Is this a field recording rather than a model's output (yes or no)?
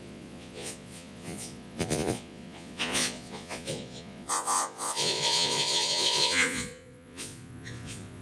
no